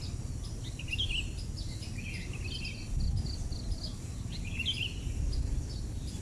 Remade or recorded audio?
recorded